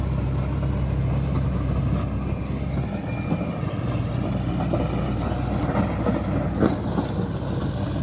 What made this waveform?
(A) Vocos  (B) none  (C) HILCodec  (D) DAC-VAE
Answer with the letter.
B